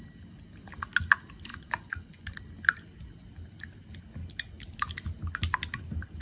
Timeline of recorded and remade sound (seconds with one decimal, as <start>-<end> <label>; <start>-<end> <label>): 0.0-1.5 recorded; 1.5-2.4 remade; 2.4-6.2 recorded